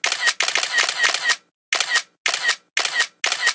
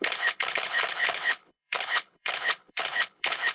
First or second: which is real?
first